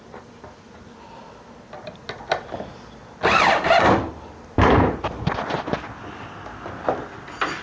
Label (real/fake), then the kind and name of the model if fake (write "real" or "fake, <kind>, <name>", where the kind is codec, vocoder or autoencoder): real